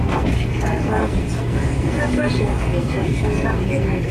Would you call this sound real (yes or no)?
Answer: no